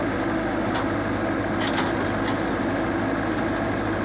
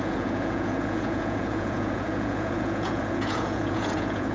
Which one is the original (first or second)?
first